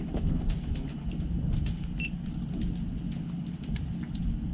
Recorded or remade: recorded